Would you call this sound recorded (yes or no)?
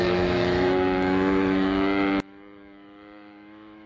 no